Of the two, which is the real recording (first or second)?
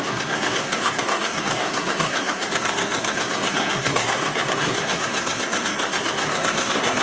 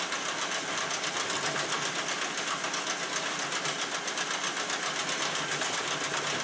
second